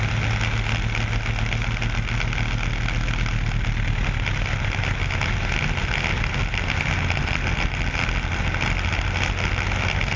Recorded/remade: recorded